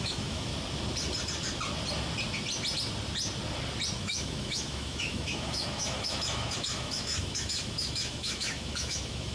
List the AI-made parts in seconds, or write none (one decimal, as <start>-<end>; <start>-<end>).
0.0-0.5; 4.0-9.3